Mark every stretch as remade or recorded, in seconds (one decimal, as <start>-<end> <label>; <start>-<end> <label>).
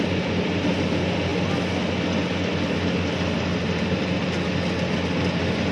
0.0-5.7 recorded